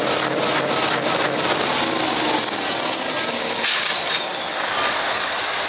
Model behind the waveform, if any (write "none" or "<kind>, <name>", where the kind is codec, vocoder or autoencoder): none